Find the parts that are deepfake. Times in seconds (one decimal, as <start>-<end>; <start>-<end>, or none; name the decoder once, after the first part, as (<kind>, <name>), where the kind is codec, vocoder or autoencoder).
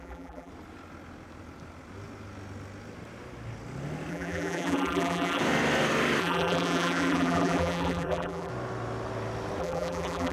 0.0-0.5 (vocoder, BigVGAN v2); 4.1-5.4; 6.2-8.5; 9.6-10.3